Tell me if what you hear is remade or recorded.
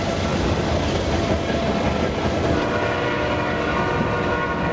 recorded